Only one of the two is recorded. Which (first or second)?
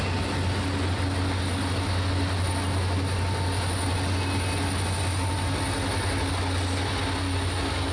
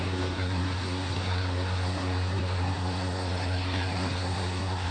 first